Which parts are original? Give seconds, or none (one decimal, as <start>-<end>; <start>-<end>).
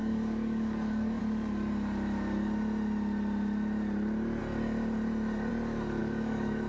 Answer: 1.2-6.0